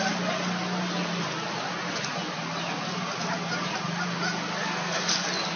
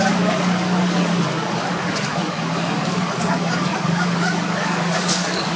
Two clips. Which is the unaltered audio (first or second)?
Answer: first